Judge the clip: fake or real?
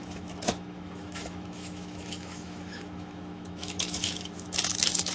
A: fake